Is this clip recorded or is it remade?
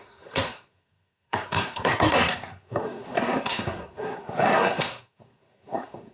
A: remade